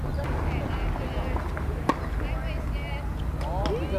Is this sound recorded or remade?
recorded